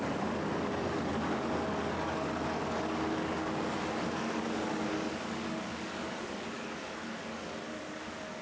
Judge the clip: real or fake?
fake